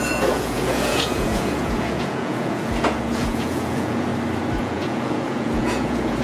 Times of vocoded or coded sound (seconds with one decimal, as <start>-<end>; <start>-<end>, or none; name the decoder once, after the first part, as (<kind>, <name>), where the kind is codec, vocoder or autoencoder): 0.0-4.1 (vocoder, Vocos); 4.6-6.2